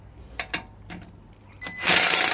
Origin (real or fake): real